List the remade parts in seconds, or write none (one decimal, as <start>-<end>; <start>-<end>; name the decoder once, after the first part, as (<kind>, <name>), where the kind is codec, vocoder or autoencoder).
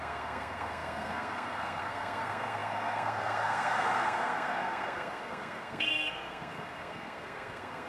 0.0-7.9 (codec, SNAC)